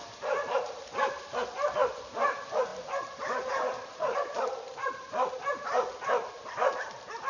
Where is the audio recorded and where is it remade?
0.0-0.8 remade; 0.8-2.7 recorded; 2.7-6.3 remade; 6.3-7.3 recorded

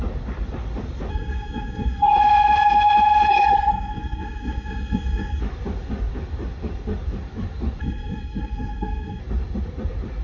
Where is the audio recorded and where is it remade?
0.0-1.1 recorded; 1.1-2.2 remade; 2.2-3.3 recorded; 3.3-5.4 remade; 5.4-7.8 recorded; 7.8-9.2 remade; 9.2-10.2 recorded

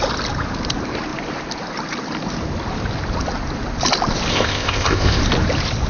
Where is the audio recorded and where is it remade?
0.0-4.3 recorded; 4.3-5.2 remade; 5.2-5.9 recorded

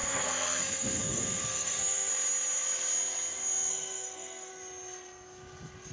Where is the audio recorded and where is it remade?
0.0-2.1 remade; 2.1-3.7 recorded; 3.7-4.5 remade; 4.5-5.9 recorded